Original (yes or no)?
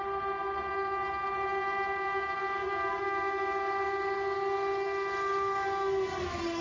yes